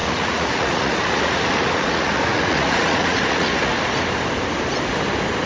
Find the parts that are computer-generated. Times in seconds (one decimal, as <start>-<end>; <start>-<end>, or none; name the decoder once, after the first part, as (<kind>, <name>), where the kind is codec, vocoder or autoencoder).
0.0-3.7 (vocoder, Vocos)